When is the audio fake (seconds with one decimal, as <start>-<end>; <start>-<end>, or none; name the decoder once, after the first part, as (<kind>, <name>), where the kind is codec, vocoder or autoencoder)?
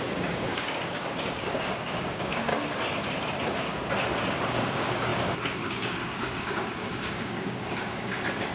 0.0-2.5 (codec, DAC); 4.5-8.5